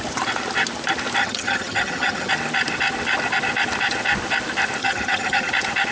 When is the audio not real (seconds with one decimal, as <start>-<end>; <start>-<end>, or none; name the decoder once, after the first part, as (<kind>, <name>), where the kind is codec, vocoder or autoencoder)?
1.2-2.3 (vocoder, HiFi-GAN); 4.8-5.5